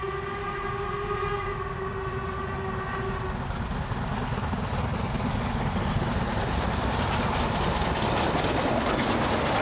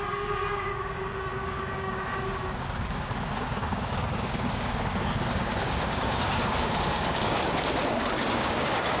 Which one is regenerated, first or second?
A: second